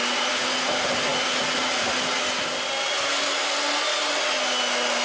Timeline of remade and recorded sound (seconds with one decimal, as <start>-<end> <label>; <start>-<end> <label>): 0.0-5.0 recorded